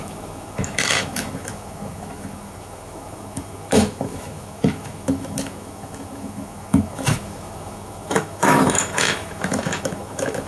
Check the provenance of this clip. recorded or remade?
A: remade